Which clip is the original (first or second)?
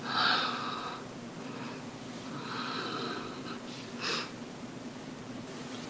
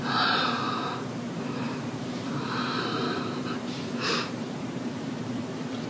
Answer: first